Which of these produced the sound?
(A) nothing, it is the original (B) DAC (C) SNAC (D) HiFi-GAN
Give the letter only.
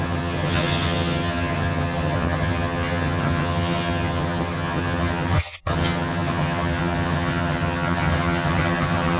D